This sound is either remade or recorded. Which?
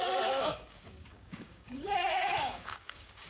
remade